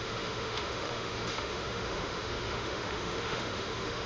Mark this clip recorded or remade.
remade